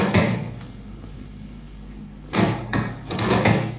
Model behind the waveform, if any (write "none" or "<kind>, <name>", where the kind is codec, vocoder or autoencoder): codec, SNAC